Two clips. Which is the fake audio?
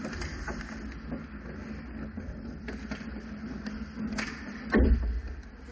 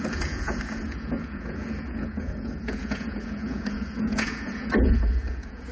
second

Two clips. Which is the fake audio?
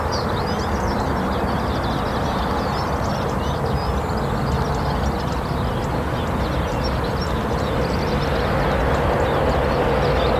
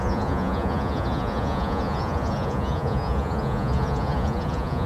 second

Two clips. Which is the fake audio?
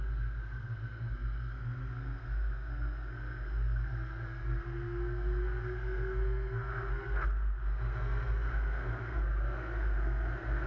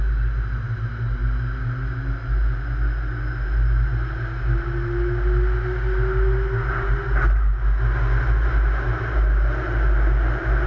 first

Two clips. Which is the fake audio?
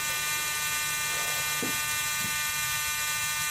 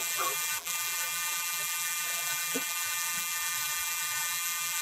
second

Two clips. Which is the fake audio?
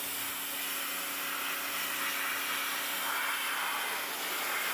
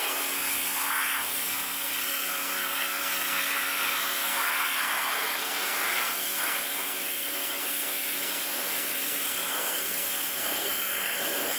second